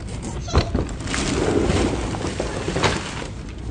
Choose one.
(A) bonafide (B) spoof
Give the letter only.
A